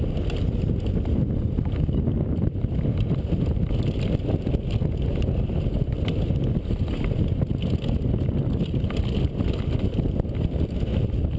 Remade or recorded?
recorded